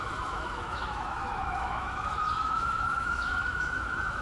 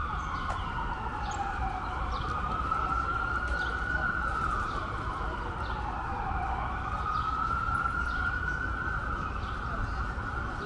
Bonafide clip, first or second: second